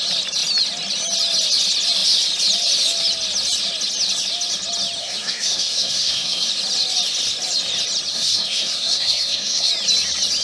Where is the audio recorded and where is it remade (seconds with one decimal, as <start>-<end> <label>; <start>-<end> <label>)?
0.0-5.0 recorded; 5.0-6.5 remade; 6.5-8.1 recorded; 8.1-9.7 remade; 9.7-10.4 recorded